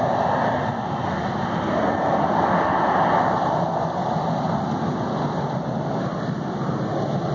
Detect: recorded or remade recorded